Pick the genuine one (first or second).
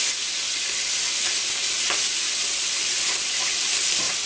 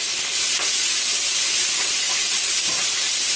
first